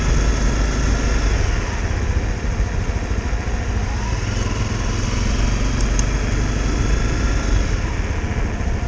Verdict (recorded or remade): recorded